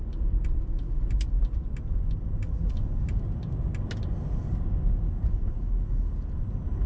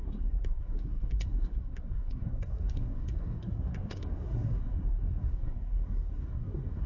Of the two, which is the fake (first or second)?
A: second